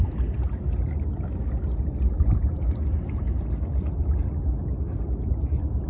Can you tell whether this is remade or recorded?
recorded